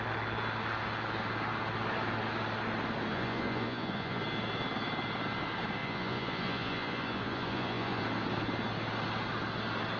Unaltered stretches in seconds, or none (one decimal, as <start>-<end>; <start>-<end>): 0.0-3.1; 4.2-5.8; 8.0-10.0